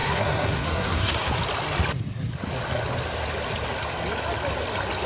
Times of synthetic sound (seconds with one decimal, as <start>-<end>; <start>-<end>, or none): 0.0-1.3